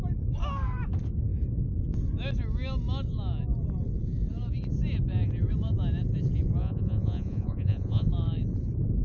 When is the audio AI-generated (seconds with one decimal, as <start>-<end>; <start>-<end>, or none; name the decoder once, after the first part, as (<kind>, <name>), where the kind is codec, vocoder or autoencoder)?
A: 6.6-8.1 (vocoder, Vocos)